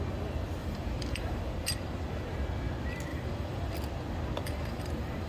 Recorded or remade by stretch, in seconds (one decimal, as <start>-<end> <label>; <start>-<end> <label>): 0.0-0.6 recorded; 0.6-1.4 remade; 1.4-3.1 recorded; 3.1-3.7 remade; 3.7-4.4 recorded; 4.4-5.3 remade